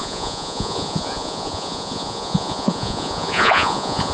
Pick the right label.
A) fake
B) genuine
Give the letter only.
A